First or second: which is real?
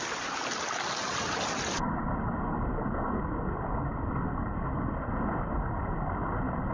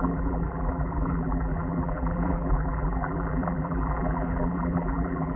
first